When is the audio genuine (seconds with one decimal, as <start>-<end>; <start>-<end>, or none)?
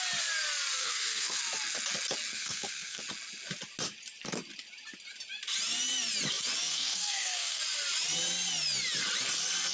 0.0-0.8; 1.4-2.3; 3.0-6.7; 7.6-9.7